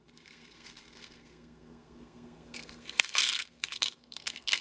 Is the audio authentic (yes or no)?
no